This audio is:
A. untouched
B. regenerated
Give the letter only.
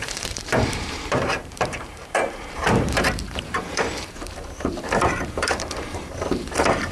B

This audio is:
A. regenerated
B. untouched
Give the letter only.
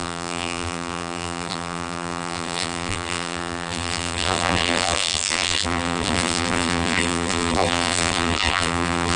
A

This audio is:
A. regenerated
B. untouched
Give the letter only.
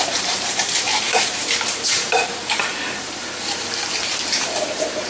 A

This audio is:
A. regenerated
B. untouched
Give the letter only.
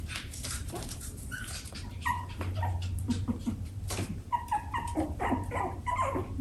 A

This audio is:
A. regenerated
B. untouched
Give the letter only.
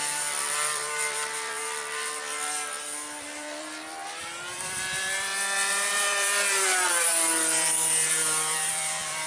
A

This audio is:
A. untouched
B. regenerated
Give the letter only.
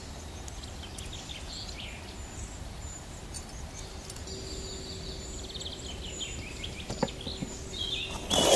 A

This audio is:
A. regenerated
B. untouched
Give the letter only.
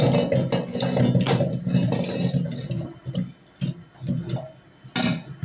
B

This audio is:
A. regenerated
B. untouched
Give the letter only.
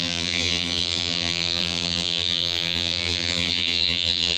A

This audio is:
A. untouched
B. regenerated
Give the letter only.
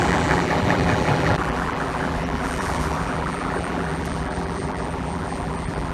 B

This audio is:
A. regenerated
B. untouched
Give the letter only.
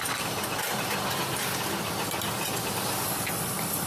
B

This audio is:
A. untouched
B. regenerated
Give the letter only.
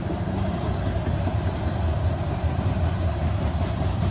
B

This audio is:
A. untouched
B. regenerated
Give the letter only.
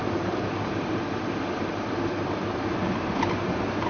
B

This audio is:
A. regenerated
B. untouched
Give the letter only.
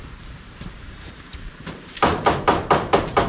A